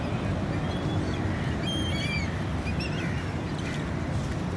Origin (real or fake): real